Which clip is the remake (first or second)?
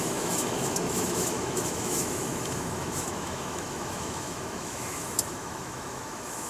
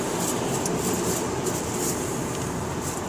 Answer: first